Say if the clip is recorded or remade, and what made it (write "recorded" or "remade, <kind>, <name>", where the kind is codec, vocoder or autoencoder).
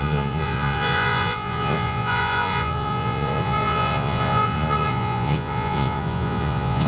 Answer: remade, vocoder, Vocos